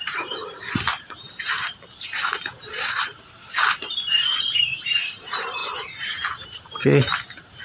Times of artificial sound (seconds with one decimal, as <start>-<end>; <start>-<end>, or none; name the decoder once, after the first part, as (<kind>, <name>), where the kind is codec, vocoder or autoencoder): 0.0-7.6 (vocoder, BigVGAN v2)